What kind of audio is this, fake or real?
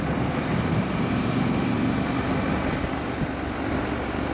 fake